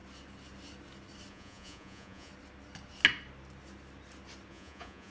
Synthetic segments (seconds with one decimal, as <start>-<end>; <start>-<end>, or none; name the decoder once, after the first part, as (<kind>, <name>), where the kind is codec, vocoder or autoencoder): 1.3-2.3 (vocoder, Vocos); 4.5-5.1